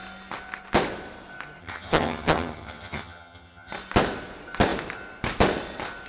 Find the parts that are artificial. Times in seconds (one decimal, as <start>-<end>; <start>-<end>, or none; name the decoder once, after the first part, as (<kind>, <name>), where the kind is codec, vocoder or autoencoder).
1.6-3.7 (vocoder, HiFi-GAN)